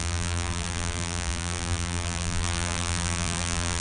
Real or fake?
fake